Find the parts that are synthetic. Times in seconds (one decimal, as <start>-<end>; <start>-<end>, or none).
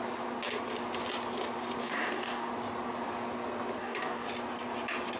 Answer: 1.8-2.5; 3.8-4.3